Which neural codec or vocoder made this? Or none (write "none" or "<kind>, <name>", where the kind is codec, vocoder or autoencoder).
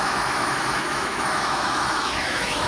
autoencoder, DAC-VAE